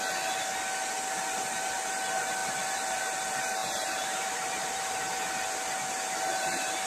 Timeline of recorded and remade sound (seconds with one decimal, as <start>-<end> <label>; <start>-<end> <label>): 0.0-2.4 recorded; 2.4-3.0 remade; 3.0-3.6 recorded; 3.6-5.0 remade; 5.0-6.9 recorded